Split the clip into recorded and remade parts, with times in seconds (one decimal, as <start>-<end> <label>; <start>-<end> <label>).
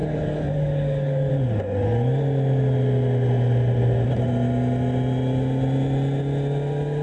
0.0-1.3 remade; 1.3-7.0 recorded